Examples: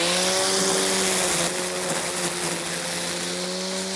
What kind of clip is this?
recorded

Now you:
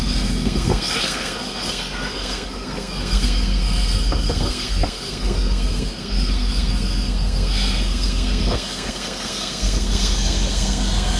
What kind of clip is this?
remade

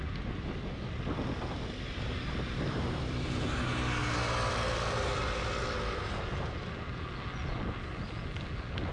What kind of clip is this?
recorded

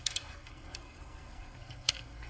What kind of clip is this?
remade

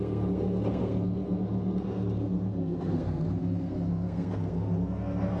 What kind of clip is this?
remade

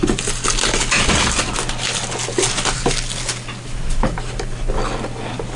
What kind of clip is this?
recorded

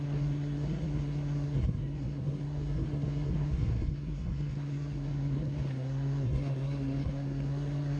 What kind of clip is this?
remade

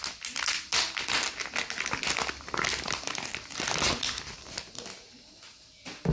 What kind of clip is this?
recorded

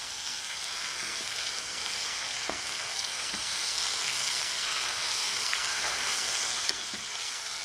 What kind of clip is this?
remade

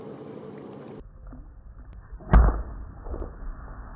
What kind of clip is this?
recorded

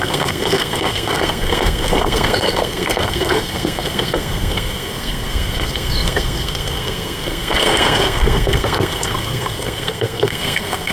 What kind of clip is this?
remade